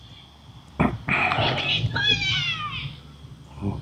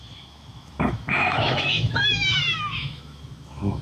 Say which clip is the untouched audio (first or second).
first